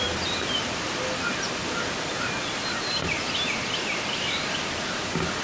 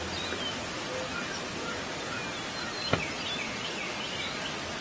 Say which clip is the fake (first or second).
first